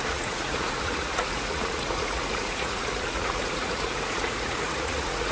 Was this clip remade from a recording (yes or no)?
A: yes